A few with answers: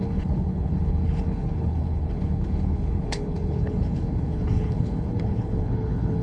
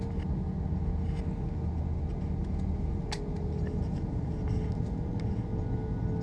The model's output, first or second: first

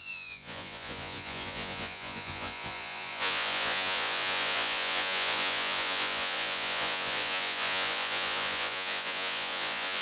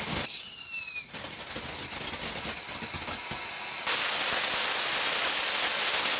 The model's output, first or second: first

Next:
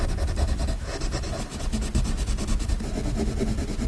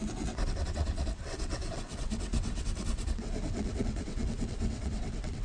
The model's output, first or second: second